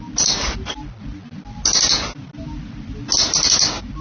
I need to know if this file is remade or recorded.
recorded